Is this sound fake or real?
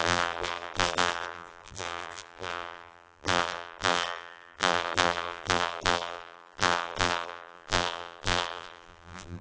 fake